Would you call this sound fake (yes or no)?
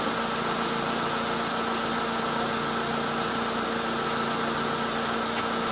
no